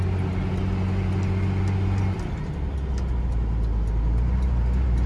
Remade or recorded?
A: recorded